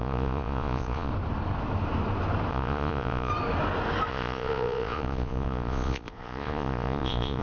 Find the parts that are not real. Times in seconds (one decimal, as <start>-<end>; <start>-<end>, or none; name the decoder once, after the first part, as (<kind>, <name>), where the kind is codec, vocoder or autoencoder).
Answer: 0.0-1.1 (vocoder, Vocos); 2.5-3.3; 4.1-7.4